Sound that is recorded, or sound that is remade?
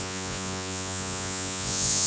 remade